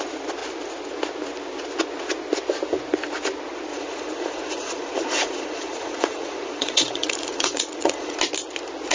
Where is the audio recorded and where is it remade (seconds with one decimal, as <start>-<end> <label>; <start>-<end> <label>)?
0.0-3.7 recorded; 3.7-8.2 remade; 8.2-8.9 recorded